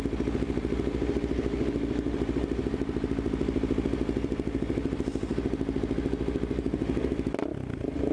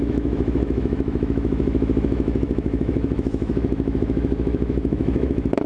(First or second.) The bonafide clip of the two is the first